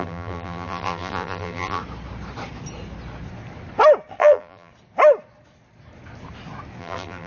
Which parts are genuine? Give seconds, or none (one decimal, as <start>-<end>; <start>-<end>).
1.8-4.2; 4.7-6.8